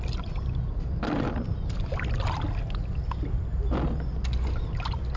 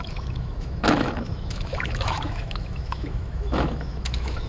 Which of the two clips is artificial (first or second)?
second